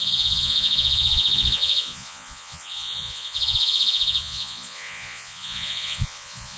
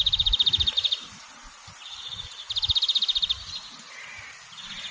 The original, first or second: second